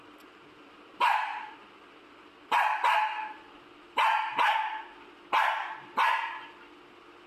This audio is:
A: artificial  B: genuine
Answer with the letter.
B